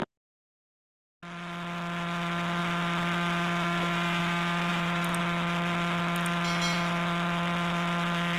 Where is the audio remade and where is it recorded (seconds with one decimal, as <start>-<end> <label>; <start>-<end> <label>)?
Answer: 0.0-4.7 recorded; 4.7-5.2 remade; 5.2-8.4 recorded